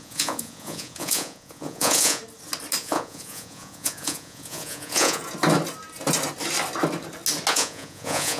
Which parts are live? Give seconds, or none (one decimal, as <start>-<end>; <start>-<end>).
2.2-2.8; 5.2-7.5